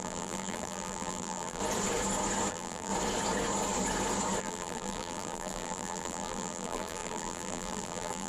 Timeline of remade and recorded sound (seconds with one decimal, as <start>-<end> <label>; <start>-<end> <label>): 0.0-1.6 remade; 1.6-2.5 recorded; 2.5-2.9 remade; 2.9-4.4 recorded; 4.4-8.3 remade

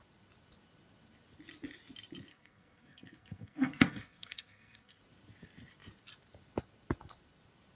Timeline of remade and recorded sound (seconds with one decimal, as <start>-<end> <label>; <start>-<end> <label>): 0.0-2.3 recorded; 2.3-5.0 remade; 5.0-7.8 recorded

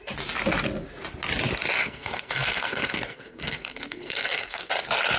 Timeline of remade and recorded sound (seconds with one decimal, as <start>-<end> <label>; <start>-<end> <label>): 0.0-1.8 recorded; 1.8-4.7 remade; 4.7-5.2 recorded